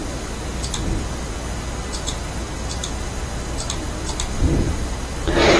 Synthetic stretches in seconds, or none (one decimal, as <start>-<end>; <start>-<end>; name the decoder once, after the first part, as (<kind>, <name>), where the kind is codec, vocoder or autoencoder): none